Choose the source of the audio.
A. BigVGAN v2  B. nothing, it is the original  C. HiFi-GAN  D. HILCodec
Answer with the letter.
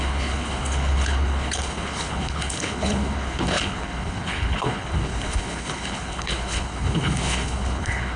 D